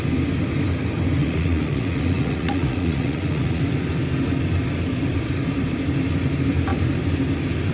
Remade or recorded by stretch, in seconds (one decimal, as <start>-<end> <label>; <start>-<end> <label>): 0.0-1.2 recorded; 1.2-3.6 remade; 3.6-7.7 recorded